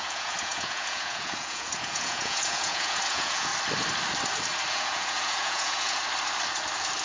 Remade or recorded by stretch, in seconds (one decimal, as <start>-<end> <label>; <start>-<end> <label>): 0.0-3.5 remade; 3.5-4.7 recorded; 4.7-6.0 remade; 6.0-7.0 recorded